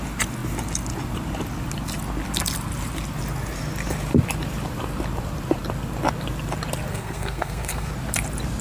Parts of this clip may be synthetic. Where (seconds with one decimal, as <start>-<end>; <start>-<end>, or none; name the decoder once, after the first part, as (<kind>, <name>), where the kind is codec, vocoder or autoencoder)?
6.9-7.9 (codec, SNAC)

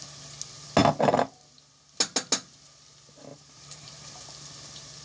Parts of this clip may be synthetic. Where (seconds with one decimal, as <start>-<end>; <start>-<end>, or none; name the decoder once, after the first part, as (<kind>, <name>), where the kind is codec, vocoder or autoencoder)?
3.3-4.2 (vocoder, BigVGAN v2)